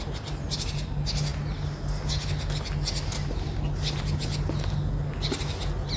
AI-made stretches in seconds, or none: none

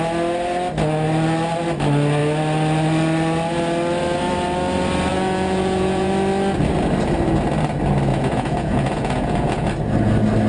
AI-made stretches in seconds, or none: 5.1-6.1 (vocoder, Vocos); 8.1-9.7

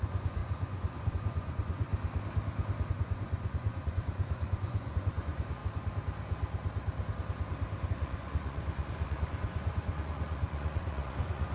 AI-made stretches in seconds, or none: 0.0-1.9 (vocoder, Vocos); 2.9-5.6; 7.9-11.5

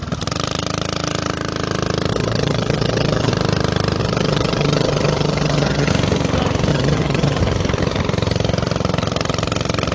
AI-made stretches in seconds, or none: 2.1-3.3 (vocoder, HiFi-GAN); 4.0-5.9; 6.7-7.4

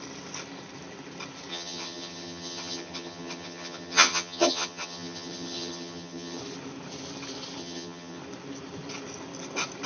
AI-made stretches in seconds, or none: 1.5-6.4 (vocoder, HiFi-GAN); 7.6-8.2

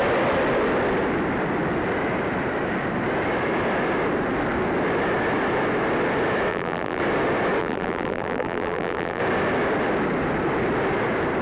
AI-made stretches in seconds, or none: 6.5-7.0 (vocoder, BigVGAN v2); 7.6-9.2

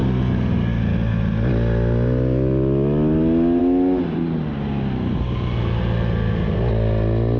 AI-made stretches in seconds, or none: none

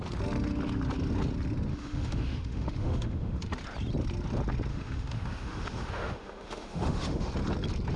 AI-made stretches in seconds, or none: 1.7-3.4 (autoencoder, DAC-VAE); 4.7-7.3